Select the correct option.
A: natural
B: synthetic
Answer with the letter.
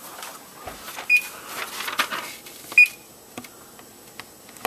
A